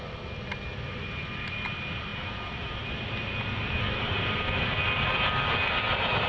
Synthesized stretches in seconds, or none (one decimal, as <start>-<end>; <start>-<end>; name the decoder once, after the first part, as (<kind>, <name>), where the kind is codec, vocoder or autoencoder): none